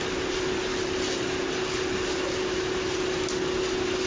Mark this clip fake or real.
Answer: real